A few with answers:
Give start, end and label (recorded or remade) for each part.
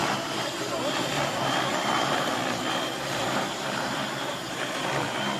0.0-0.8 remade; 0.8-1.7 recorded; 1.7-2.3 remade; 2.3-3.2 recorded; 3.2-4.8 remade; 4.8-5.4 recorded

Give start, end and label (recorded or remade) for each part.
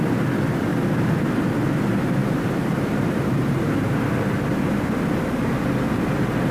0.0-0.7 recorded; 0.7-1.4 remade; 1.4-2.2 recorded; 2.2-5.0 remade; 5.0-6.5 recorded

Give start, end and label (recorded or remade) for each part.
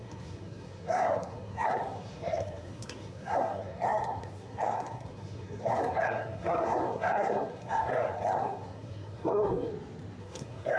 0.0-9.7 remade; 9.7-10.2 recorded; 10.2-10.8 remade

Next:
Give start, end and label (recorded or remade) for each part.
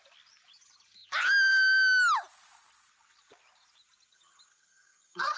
0.0-4.1 recorded; 4.1-5.4 remade